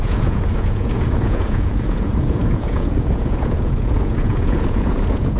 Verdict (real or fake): fake